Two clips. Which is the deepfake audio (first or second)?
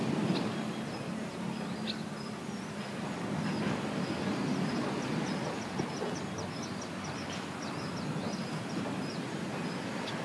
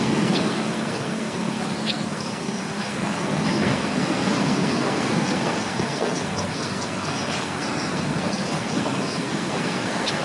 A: second